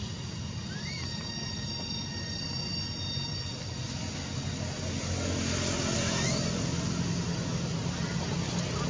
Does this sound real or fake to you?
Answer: real